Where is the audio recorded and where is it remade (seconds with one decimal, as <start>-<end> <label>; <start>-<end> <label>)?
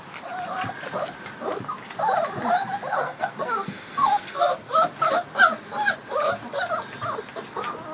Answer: 0.0-2.9 recorded; 2.9-4.7 remade; 4.7-7.9 recorded